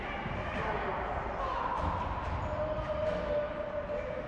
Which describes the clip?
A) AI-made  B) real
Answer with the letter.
B